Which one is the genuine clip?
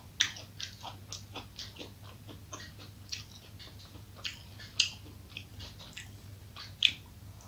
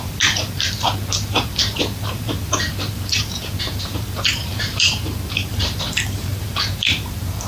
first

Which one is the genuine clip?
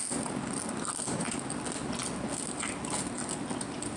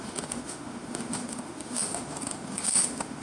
first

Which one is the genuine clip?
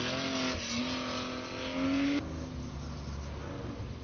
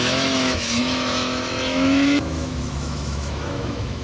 first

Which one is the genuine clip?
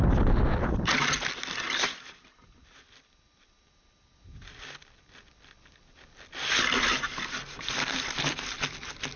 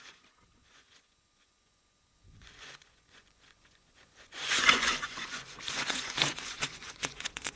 first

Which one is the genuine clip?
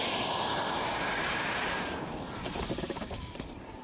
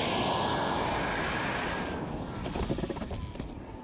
second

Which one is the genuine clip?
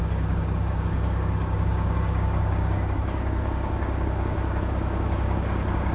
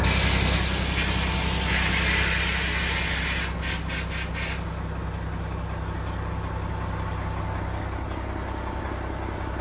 second